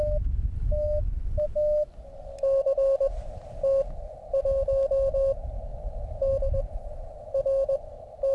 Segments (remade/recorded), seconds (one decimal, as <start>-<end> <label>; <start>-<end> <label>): 0.0-8.3 recorded